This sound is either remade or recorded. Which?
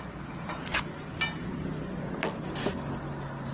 recorded